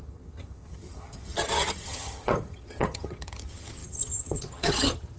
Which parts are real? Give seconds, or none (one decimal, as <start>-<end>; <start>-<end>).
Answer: none